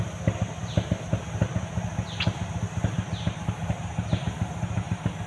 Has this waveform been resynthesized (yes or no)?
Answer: no